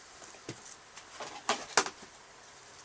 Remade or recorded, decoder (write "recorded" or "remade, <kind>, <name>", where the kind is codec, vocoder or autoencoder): recorded